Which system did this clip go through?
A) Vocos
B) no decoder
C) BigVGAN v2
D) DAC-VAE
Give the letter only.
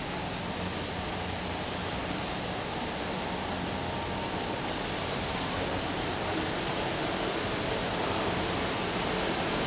B